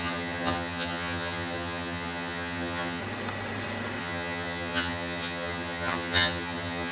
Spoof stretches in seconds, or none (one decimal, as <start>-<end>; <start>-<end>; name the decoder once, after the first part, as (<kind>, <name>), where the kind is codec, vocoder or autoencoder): 0.0-3.0 (vocoder, HiFi-GAN); 4.0-6.9